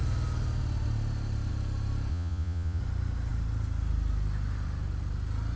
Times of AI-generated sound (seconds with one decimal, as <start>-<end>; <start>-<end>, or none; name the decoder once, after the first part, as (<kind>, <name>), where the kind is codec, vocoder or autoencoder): 2.1-2.8 (vocoder, Vocos)